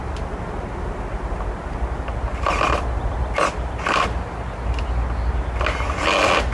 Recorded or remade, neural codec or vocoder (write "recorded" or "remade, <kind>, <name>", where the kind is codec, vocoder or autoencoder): recorded